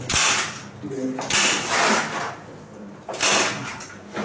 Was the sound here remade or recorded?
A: recorded